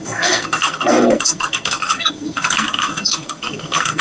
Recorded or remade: remade